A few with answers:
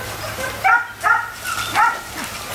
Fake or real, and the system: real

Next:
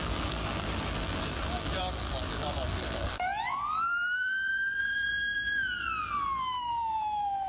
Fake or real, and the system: fake, vocoder, BigVGAN v2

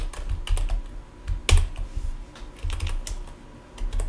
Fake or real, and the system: real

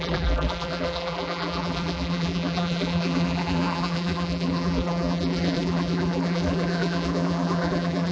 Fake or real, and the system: fake, vocoder, BigVGAN v2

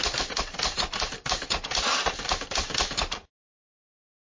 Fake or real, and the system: fake, vocoder, BigVGAN v2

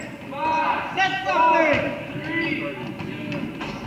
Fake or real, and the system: real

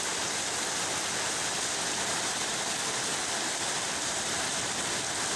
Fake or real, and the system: real